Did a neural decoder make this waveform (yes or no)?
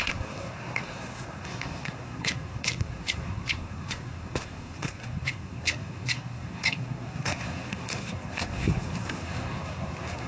yes